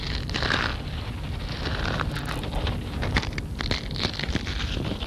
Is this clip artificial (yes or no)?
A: no